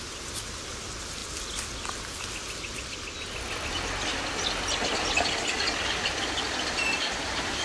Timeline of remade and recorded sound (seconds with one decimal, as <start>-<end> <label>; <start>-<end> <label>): 0.0-7.6 recorded